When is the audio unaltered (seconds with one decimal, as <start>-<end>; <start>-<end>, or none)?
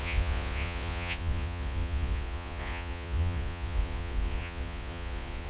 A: none